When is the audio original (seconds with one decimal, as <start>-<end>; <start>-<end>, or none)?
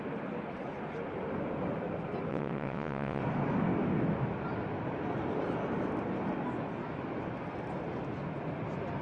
0.0-2.3; 3.2-9.0